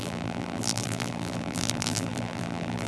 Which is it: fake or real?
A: fake